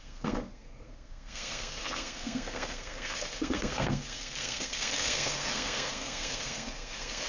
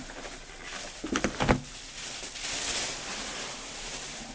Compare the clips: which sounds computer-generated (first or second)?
first